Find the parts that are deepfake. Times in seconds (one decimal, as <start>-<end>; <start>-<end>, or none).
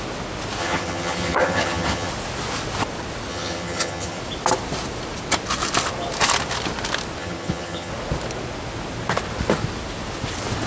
0.6-2.1; 3.3-4.2; 7.2-7.9